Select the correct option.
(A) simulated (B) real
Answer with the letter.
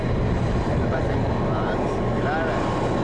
B